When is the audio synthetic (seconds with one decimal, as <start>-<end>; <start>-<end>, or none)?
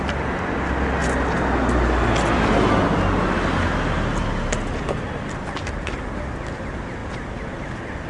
none